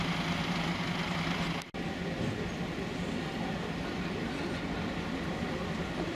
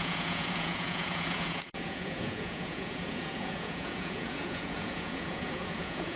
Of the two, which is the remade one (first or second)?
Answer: second